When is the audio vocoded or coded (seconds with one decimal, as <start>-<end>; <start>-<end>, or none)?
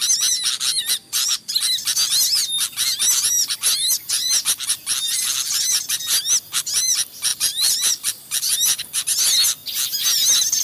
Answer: 7.3-8.8